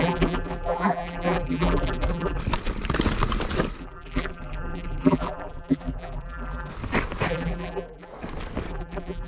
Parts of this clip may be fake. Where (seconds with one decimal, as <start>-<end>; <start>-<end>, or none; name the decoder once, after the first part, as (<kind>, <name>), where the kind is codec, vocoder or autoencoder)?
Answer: 0.0-2.4 (vocoder, BigVGAN v2); 3.8-6.7; 7.3-8.1; 8.7-9.3